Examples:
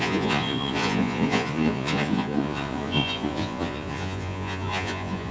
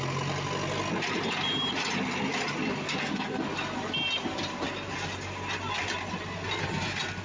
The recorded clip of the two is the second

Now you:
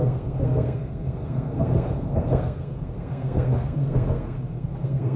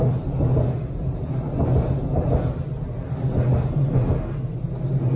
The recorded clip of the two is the second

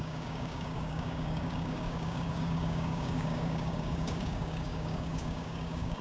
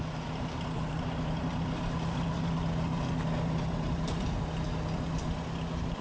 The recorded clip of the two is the second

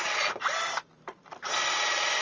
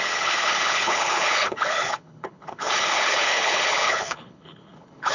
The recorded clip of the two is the first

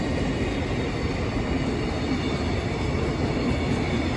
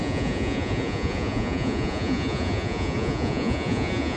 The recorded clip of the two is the first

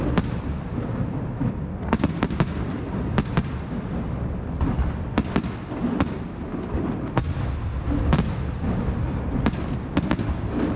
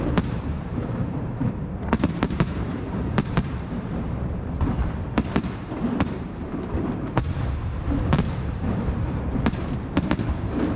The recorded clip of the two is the first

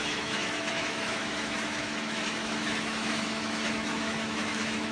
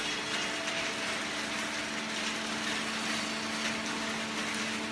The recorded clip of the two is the second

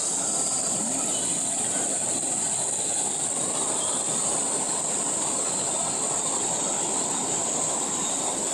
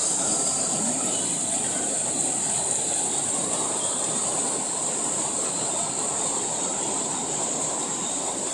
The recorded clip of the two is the first